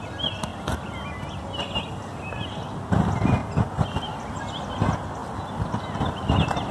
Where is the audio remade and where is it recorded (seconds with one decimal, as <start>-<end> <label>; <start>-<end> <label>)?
0.0-6.7 recorded